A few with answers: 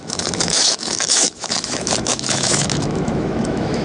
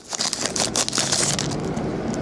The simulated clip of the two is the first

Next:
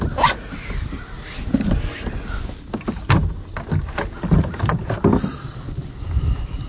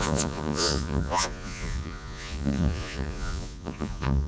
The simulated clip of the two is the second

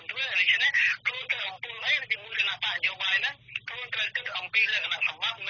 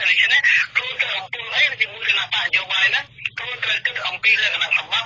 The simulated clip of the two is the second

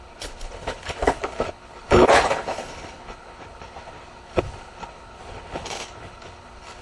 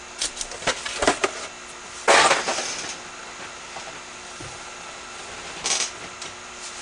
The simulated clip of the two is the first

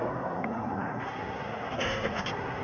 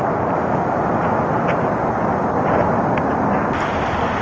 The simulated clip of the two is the first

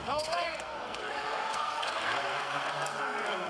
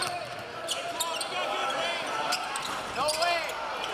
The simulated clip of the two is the first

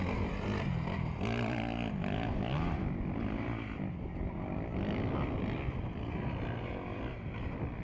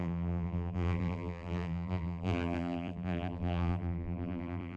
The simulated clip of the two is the second